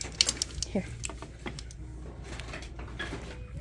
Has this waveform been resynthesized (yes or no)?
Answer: no